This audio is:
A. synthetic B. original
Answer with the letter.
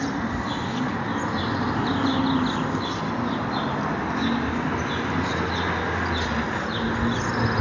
B